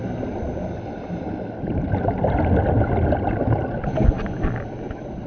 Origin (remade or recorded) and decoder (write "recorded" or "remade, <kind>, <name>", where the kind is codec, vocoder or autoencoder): recorded